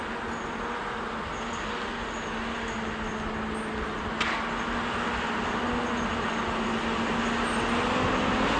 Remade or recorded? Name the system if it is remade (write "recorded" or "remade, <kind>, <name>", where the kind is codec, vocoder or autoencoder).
recorded